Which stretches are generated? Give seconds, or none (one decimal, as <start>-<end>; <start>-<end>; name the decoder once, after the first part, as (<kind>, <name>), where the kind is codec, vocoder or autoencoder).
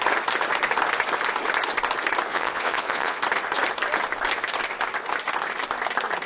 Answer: 2.3-3.2 (vocoder, Vocos)